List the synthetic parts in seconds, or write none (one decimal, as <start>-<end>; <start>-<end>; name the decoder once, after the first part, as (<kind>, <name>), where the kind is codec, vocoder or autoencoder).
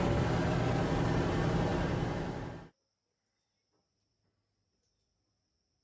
none